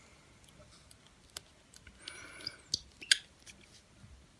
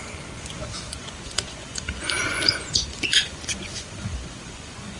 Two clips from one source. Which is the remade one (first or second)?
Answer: second